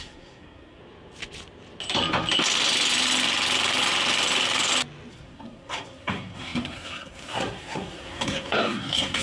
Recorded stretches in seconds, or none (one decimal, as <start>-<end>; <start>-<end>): 0.8-5.1